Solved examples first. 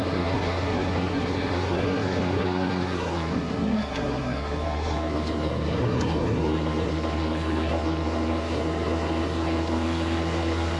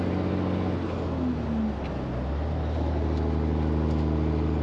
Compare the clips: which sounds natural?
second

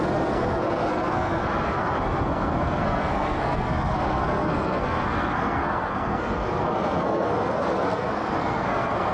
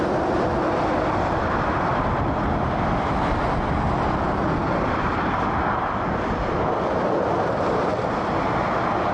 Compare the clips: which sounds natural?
second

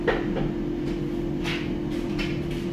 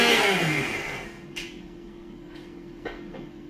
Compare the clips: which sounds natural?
first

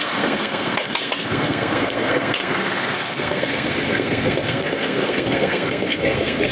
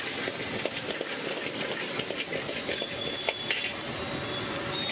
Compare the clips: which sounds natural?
second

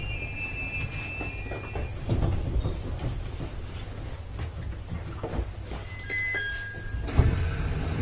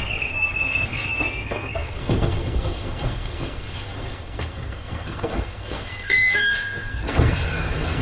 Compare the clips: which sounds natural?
first